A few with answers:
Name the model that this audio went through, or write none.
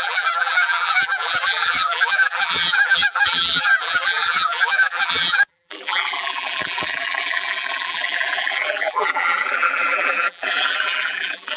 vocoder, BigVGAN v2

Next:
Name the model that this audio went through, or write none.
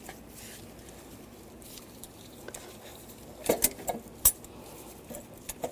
none